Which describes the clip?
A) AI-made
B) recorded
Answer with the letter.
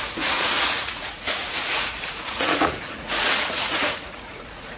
A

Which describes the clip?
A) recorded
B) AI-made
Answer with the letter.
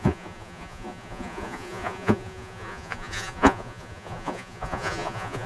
B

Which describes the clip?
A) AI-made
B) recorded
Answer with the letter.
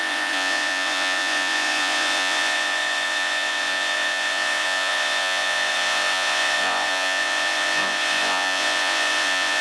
A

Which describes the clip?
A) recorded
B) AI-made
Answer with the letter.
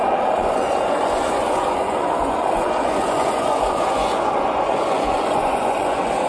B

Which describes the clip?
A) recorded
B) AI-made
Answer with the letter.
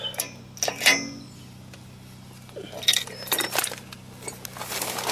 A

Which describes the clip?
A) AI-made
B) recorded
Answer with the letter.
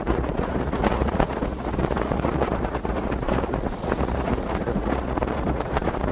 A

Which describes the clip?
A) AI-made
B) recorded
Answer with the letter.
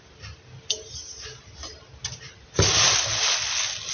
B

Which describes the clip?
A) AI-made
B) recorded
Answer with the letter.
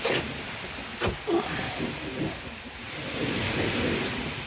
B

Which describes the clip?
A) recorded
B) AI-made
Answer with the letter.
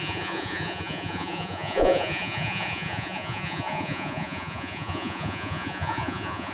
B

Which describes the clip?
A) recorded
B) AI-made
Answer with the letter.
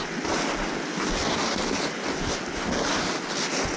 A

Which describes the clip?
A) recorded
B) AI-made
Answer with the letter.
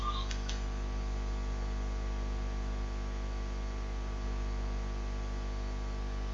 A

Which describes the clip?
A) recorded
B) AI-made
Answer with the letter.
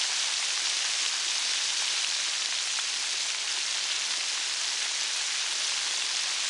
A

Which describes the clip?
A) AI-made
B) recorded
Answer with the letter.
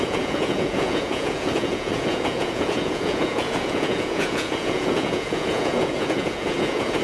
A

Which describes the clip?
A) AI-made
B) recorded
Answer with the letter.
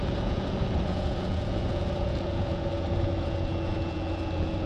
A